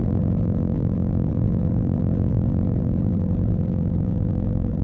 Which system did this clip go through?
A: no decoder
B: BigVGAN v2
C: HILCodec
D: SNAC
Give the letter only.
B